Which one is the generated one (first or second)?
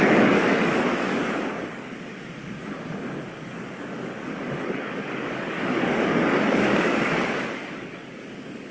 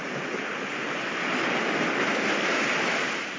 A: first